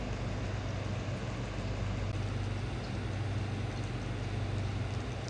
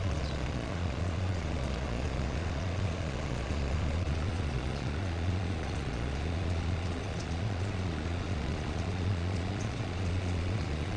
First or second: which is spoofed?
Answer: second